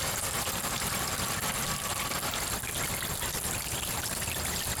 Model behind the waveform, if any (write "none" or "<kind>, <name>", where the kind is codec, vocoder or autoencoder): none